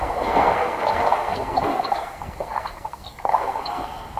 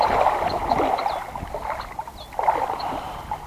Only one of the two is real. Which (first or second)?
second